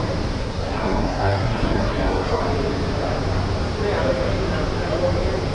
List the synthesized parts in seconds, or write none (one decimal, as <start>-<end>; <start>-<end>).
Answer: 0.4-2.4